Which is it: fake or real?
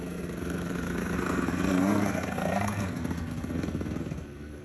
fake